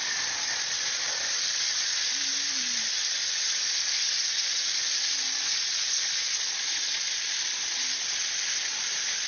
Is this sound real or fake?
real